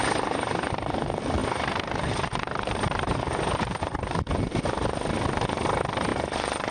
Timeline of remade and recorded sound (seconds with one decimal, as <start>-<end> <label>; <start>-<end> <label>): 0.0-0.7 remade; 0.7-1.4 recorded; 1.4-4.6 remade; 4.6-6.7 recorded